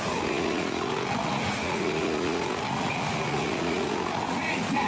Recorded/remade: remade